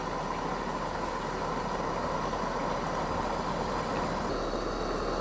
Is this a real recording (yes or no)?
yes